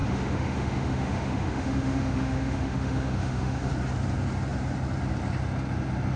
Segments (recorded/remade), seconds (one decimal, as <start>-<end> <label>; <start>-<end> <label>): 0.0-3.7 remade; 3.7-6.2 recorded

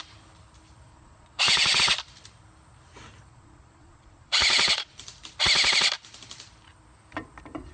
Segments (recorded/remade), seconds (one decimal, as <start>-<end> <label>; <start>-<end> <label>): 0.0-0.9 recorded; 0.9-1.8 remade; 1.8-3.3 recorded; 3.3-4.9 remade; 4.9-7.7 recorded

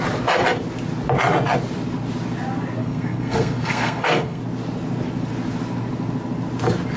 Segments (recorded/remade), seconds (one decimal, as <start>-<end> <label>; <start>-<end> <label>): 0.0-2.8 recorded; 2.8-4.4 remade; 4.4-7.0 recorded

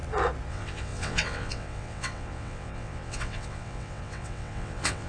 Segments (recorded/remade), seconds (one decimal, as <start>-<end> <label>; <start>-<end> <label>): 0.0-0.5 recorded; 0.5-5.1 remade

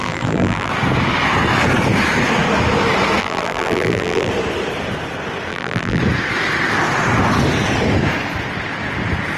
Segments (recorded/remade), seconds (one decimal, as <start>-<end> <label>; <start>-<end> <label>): 0.0-0.7 remade; 0.7-3.2 recorded; 3.2-4.3 remade; 4.3-5.5 recorded; 5.5-6.0 remade; 6.0-9.4 recorded